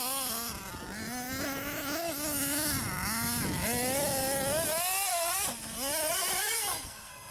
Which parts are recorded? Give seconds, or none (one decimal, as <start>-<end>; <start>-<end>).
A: 0.0-6.4